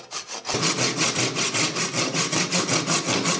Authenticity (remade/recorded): recorded